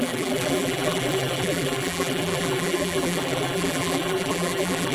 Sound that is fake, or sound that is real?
fake